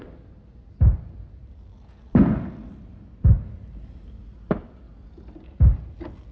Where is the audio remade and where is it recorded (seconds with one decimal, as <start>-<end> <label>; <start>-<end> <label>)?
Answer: 0.0-4.2 recorded; 4.2-5.4 remade; 5.4-6.3 recorded